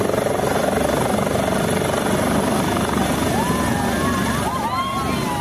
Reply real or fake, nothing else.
real